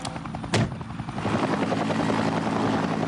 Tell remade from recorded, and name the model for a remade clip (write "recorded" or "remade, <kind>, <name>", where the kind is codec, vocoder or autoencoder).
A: recorded